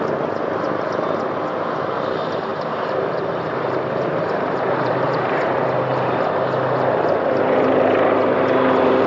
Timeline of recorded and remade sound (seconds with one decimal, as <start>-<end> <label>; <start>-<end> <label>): 0.0-2.5 recorded; 2.5-6.2 remade; 6.2-9.1 recorded